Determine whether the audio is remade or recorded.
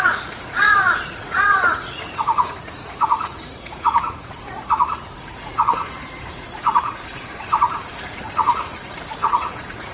remade